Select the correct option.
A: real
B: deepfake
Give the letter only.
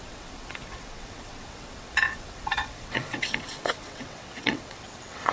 B